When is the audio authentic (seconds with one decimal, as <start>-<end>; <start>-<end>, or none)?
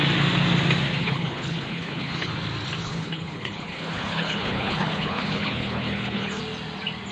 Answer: 0.0-1.0; 2.3-2.8; 6.4-7.1